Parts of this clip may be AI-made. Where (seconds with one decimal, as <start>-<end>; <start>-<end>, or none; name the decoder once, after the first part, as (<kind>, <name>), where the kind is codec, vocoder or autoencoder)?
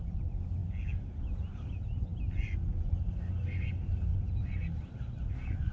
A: none